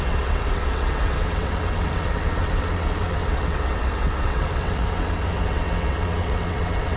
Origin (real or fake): fake